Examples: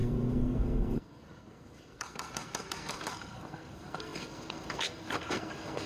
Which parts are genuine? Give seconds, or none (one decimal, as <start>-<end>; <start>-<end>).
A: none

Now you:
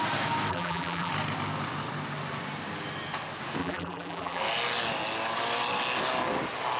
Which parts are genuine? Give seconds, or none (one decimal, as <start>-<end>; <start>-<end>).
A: 0.0-0.5; 1.1-3.6; 4.4-6.8

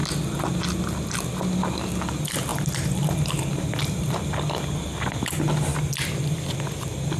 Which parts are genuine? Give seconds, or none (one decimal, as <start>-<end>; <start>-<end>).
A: 0.0-5.7; 6.5-7.2